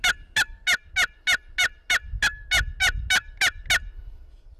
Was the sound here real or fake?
real